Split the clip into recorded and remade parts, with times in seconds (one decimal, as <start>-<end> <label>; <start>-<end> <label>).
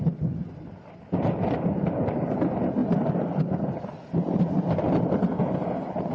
0.0-6.1 recorded